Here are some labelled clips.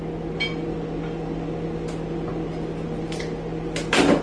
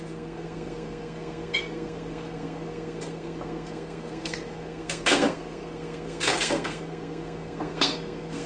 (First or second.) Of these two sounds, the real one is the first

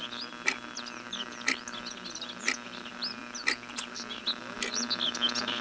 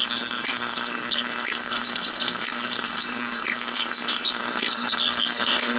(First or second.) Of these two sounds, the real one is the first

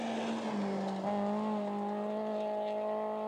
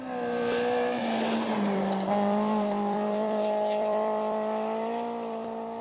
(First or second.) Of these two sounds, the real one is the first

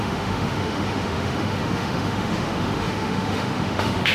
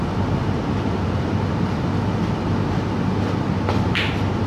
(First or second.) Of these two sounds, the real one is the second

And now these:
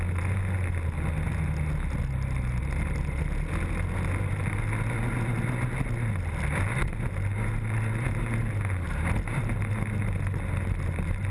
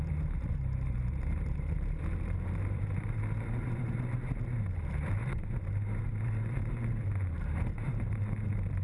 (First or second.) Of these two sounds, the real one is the first